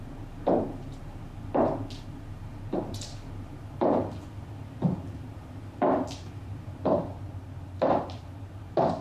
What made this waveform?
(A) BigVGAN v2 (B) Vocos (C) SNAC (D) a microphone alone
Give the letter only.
D